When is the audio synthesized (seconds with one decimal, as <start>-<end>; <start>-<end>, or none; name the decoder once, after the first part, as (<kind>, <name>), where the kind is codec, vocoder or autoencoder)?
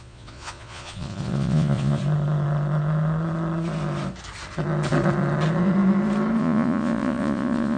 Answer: 0.0-2.0 (vocoder, Vocos); 6.4-7.8